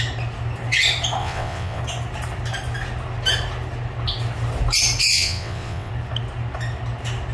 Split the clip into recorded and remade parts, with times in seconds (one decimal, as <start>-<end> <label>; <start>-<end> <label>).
0.0-1.2 recorded; 1.2-1.8 remade; 1.8-5.1 recorded; 5.1-5.9 remade; 5.9-7.3 recorded